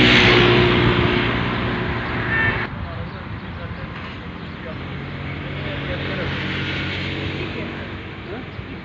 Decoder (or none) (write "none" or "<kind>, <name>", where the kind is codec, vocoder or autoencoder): none